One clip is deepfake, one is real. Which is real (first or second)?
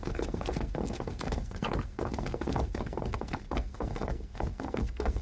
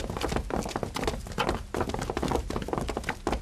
second